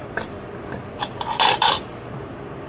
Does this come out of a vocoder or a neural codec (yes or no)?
yes